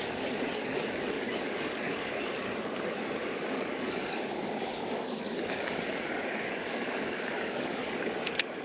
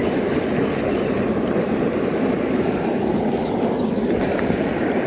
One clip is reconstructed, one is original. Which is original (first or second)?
second